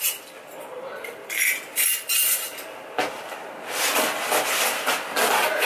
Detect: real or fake real